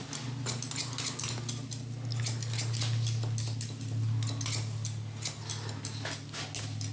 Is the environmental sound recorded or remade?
recorded